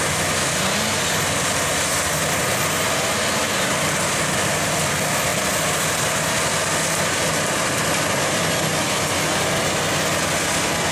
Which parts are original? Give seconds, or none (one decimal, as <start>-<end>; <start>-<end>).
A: 0.0-10.9